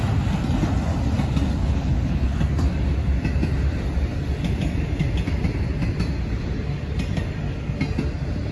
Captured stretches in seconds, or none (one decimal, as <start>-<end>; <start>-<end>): 0.0-1.6; 2.4-8.5